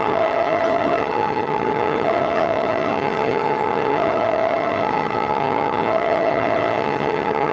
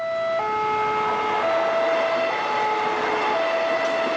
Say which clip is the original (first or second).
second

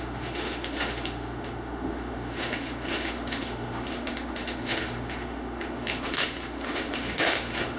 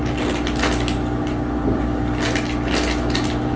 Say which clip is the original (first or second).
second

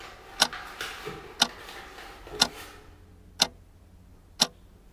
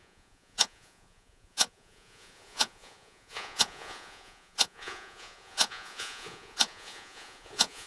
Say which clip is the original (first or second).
first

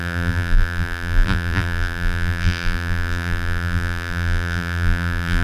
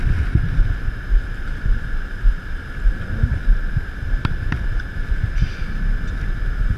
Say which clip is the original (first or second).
second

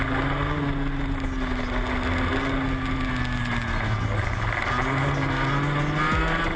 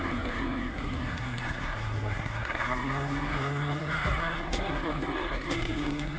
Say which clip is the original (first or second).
first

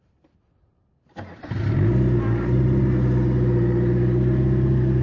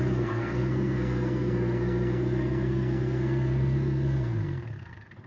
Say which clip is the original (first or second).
first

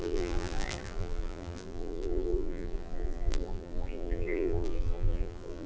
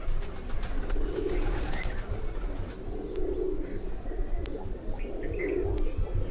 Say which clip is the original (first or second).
second